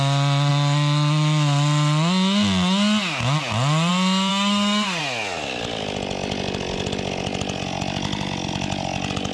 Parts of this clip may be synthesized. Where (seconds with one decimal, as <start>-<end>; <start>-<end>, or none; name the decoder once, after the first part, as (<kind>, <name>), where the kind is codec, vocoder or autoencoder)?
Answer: 4.3-5.0 (codec, DAC)